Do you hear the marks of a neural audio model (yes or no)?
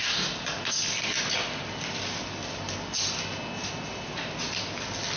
no